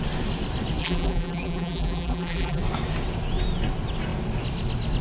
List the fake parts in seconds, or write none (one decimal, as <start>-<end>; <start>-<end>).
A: 0.8-2.6